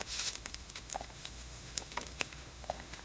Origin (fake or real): fake